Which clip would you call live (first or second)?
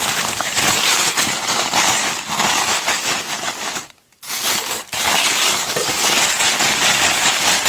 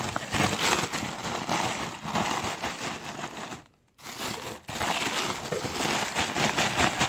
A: second